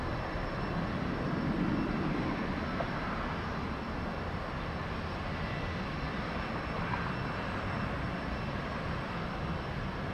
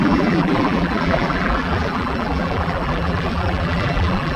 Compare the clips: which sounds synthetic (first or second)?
second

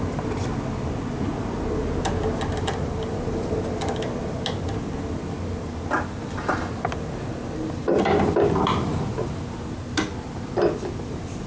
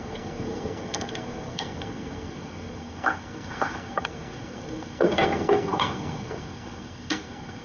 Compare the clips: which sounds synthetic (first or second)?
second